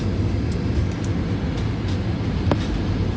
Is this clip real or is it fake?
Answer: real